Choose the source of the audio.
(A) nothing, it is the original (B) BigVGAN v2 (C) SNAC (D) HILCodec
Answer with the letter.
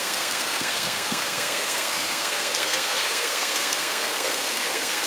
C